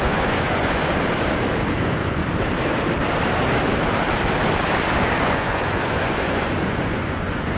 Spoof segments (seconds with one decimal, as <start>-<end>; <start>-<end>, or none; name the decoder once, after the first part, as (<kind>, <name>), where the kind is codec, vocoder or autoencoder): 0.0-0.9 (vocoder, Vocos); 1.8-2.2; 5.2-7.6